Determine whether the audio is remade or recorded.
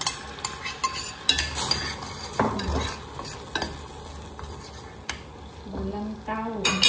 recorded